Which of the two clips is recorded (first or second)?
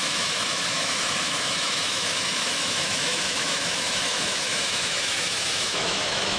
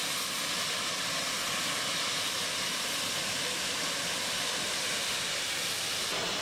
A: second